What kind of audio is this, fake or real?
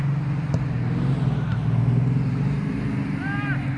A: real